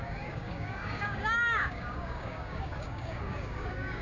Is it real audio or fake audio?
fake